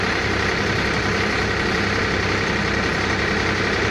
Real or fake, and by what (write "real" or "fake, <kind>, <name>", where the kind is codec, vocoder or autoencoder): real